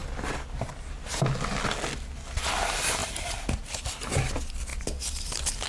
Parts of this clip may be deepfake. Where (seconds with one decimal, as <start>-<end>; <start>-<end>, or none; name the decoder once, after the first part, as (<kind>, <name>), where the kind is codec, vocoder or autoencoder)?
3.0-3.9 (vocoder, BigVGAN v2); 4.7-5.7